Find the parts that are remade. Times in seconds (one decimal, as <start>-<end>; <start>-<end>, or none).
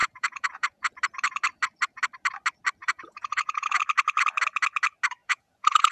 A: 0.0-0.9; 2.8-3.8; 5.2-5.9